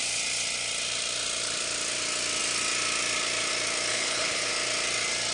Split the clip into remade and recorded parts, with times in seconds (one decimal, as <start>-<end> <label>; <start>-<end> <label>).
0.0-3.9 recorded; 3.9-4.5 remade; 4.5-5.3 recorded